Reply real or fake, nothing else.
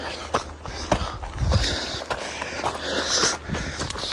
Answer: real